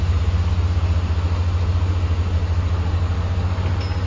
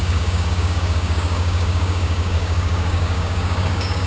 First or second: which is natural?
first